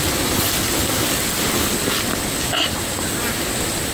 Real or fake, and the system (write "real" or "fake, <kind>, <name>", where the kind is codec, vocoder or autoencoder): real